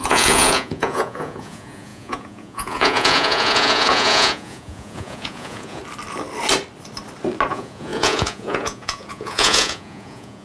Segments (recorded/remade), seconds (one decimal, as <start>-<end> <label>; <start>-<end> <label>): 0.0-5.8 remade; 5.8-7.5 recorded; 7.5-10.4 remade